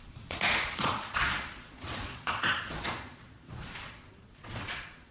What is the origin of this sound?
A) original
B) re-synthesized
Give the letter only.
B